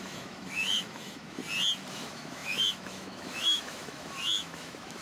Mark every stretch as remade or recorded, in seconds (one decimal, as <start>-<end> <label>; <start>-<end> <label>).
0.0-1.4 remade; 1.4-1.9 recorded; 1.9-5.0 remade